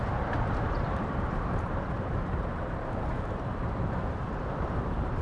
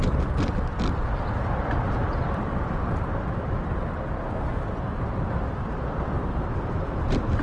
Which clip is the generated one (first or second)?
first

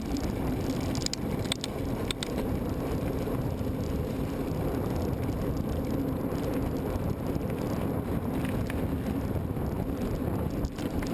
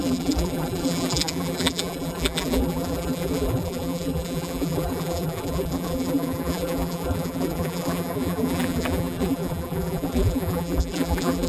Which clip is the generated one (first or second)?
second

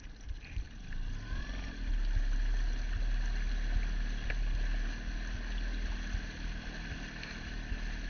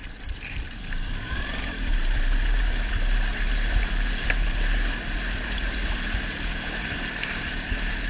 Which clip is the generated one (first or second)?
second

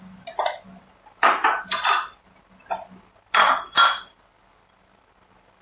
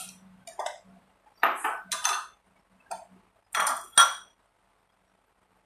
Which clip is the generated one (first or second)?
first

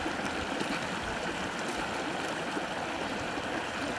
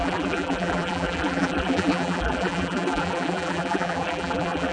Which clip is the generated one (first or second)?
second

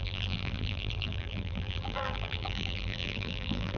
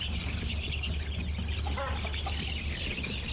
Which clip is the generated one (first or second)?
first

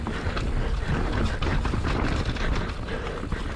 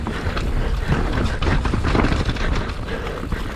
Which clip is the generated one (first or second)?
second